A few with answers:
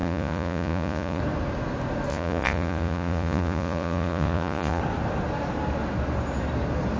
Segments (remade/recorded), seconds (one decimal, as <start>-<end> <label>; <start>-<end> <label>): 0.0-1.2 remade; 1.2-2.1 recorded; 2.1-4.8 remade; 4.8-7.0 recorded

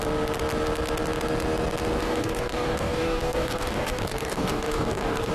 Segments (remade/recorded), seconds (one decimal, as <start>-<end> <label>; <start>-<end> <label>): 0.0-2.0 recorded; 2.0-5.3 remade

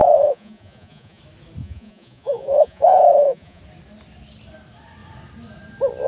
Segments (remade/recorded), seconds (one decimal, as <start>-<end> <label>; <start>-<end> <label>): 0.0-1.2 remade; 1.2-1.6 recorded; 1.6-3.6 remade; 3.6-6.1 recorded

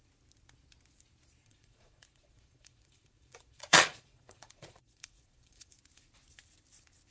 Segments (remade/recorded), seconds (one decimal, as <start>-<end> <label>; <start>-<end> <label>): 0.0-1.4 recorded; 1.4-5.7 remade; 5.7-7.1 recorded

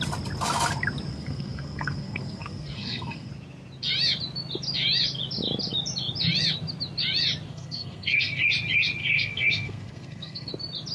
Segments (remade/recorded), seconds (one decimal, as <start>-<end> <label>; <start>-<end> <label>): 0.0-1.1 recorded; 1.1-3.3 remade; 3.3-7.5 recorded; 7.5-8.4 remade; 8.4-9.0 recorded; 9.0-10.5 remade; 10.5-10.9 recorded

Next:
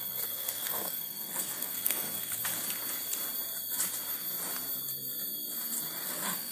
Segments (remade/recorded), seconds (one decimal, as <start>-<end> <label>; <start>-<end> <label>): 0.0-2.4 remade; 2.4-6.1 recorded; 6.1-6.5 remade